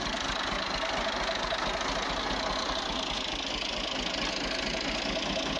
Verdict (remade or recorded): recorded